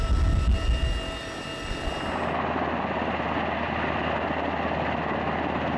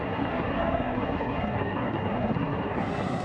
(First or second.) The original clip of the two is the first